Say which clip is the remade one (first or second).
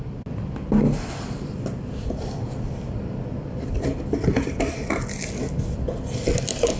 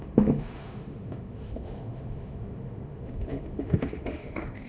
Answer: second